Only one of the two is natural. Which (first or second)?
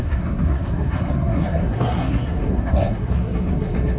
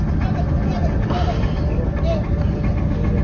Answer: second